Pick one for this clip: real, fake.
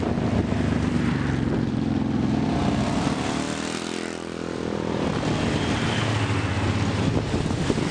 real